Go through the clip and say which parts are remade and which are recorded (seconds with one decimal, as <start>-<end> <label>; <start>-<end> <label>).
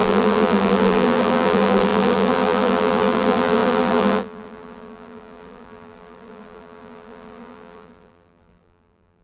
0.0-9.2 remade